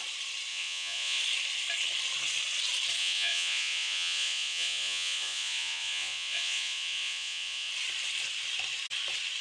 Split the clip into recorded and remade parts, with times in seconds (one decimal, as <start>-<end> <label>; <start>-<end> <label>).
0.0-0.5 recorded; 0.5-1.2 remade; 1.2-3.0 recorded; 3.0-7.7 remade; 7.7-9.4 recorded